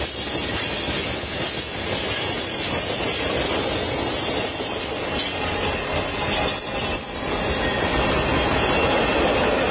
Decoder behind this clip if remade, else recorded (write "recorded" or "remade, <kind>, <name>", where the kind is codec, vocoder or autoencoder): recorded